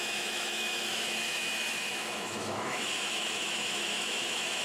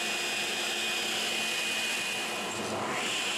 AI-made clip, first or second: first